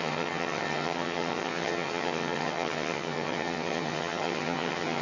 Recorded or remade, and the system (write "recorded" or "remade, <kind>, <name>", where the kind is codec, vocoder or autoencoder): remade, vocoder, HiFi-GAN